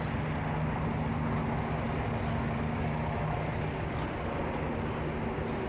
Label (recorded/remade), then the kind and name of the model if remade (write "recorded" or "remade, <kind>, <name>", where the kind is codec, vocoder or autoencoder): recorded